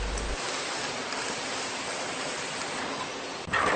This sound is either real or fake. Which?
real